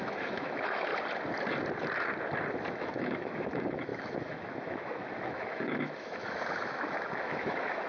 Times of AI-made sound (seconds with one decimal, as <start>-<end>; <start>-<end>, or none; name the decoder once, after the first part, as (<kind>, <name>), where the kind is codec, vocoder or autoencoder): 0.0-0.9 (autoencoder, DAC-VAE); 2.7-7.9